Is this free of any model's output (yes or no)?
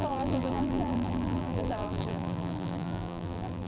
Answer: no